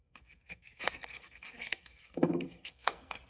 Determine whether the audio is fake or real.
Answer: fake